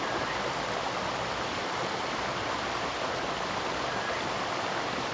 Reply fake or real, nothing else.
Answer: real